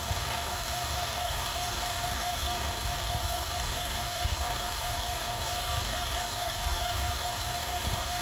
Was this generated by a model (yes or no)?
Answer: yes